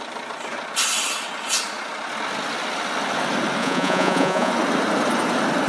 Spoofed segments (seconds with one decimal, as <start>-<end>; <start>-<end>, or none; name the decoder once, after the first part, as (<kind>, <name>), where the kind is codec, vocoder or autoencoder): 3.6-4.5 (vocoder, Vocos)